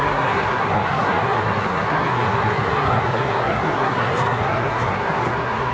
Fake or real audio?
fake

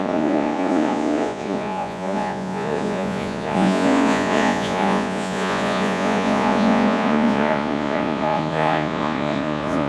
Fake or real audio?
fake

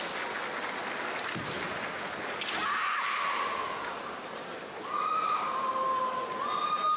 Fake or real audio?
real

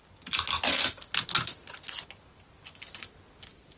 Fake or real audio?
real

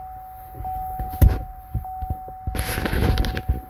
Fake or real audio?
real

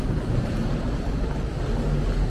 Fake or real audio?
real